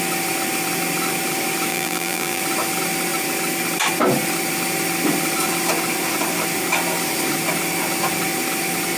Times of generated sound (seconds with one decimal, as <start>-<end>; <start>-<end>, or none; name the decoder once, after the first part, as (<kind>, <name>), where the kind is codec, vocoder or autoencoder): 1.7-2.4 (vocoder, BigVGAN v2)